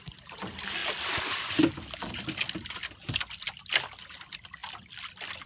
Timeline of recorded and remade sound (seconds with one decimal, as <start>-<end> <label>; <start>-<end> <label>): 0.0-5.5 recorded